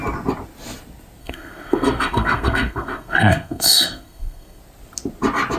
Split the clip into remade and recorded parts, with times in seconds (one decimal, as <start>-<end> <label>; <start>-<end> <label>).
0.0-1.2 recorded; 1.2-4.6 remade; 4.6-5.6 recorded